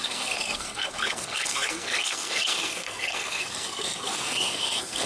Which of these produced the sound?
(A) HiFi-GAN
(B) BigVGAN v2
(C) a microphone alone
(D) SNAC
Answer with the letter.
D